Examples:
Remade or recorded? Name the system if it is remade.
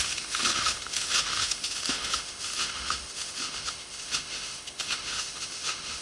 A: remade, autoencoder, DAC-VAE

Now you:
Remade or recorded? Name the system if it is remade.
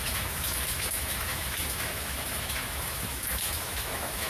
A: remade, autoencoder, DAC-VAE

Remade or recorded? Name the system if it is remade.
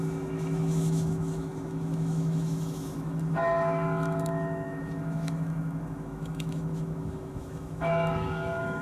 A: remade, autoencoder, DAC-VAE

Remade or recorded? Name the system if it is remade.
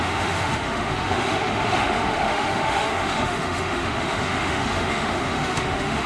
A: remade, autoencoder, DAC-VAE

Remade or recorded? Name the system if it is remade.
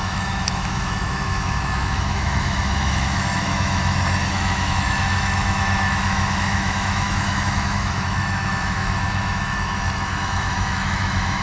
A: remade, autoencoder, DAC-VAE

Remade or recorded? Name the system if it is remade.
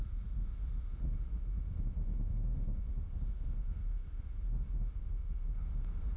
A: remade, autoencoder, DAC-VAE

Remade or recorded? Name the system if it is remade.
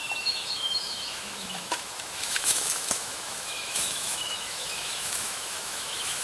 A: remade, autoencoder, DAC-VAE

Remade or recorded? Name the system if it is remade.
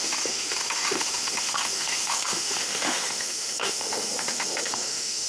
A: remade, autoencoder, DAC-VAE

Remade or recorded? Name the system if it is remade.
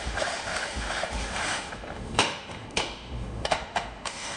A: remade, autoencoder, DAC-VAE